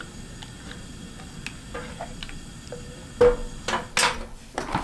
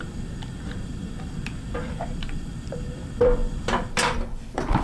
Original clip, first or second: first